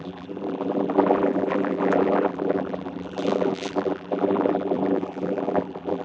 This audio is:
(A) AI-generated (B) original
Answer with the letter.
A